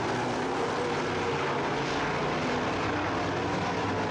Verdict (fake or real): real